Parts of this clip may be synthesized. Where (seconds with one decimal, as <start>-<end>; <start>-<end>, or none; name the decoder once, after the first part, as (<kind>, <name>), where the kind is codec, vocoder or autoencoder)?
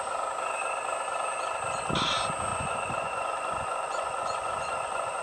2.5-5.2 (vocoder, Vocos)